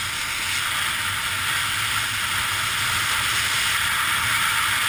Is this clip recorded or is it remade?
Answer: recorded